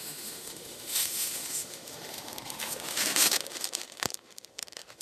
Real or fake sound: fake